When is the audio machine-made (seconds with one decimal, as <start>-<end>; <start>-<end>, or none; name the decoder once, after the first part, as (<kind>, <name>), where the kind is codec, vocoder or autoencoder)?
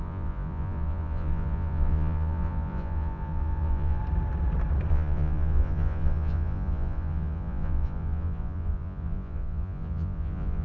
0.0-4.0 (vocoder, Vocos); 4.9-10.6